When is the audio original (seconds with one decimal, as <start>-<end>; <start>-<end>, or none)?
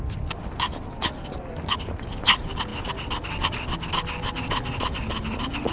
0.0-5.7